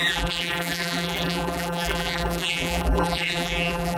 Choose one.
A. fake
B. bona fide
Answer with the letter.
A